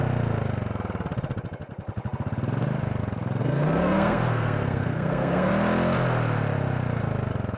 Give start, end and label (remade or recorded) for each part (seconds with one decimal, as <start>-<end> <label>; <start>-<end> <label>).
0.0-3.4 recorded; 3.4-5.5 remade; 5.5-7.6 recorded